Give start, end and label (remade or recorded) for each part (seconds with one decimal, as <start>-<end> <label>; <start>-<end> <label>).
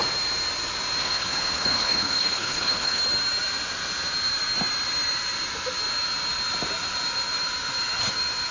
0.0-1.0 recorded; 1.0-3.0 remade; 3.0-8.5 recorded